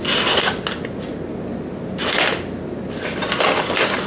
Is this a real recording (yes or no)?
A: yes